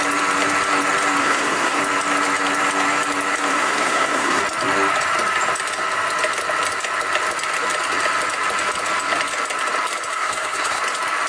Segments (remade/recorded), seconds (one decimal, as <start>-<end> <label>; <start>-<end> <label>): 0.0-1.2 recorded; 1.2-1.8 remade; 1.8-3.5 recorded; 3.5-4.4 remade; 4.4-10.1 recorded; 10.1-10.8 remade; 10.8-11.3 recorded